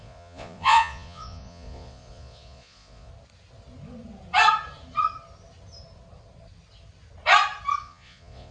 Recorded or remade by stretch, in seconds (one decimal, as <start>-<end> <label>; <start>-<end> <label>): 0.0-3.1 remade; 3.1-7.8 recorded; 7.8-8.5 remade